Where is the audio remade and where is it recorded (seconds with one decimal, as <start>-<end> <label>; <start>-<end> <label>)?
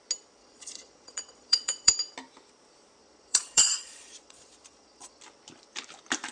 0.0-0.4 recorded; 0.4-2.0 remade; 2.0-3.0 recorded; 3.0-5.2 remade; 5.2-6.3 recorded